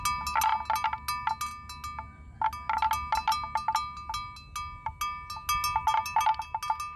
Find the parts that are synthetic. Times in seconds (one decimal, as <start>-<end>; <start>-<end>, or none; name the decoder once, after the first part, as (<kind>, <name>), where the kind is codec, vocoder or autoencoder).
none